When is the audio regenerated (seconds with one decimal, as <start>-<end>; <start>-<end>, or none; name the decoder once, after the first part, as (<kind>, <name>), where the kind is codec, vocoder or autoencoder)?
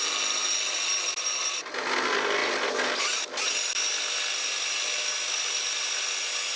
none